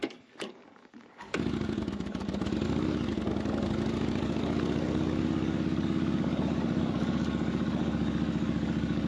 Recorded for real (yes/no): no